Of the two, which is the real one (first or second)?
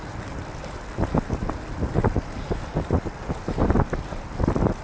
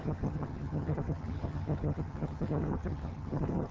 first